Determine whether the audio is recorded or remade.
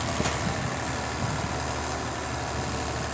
recorded